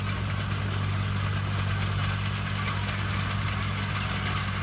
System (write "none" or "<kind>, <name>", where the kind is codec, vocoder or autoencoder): none